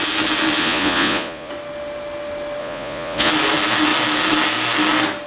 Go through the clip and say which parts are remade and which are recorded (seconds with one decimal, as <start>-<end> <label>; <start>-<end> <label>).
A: 0.0-0.6 recorded; 0.6-1.5 remade; 1.5-2.6 recorded; 2.6-3.3 remade; 3.3-5.3 recorded